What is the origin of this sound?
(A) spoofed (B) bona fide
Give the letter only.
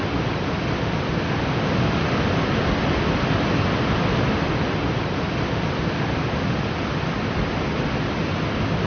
B